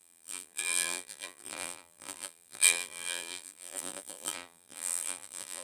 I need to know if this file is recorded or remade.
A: remade